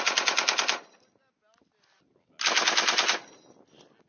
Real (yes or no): yes